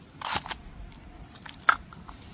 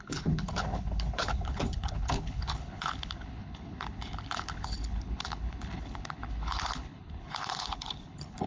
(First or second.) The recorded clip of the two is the first